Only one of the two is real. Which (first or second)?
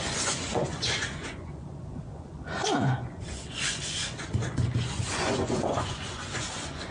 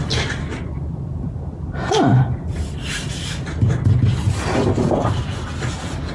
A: second